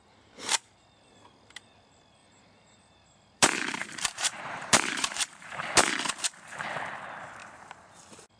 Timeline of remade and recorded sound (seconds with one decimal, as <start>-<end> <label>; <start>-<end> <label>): 0.0-2.2 recorded; 2.2-5.9 remade; 5.9-8.4 recorded